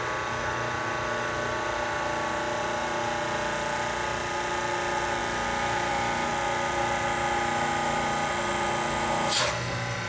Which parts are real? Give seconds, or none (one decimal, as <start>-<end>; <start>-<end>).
0.0-10.1